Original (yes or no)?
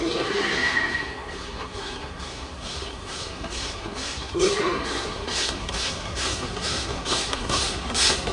no